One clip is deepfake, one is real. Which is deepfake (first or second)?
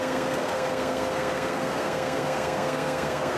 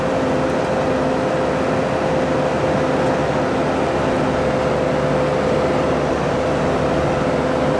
first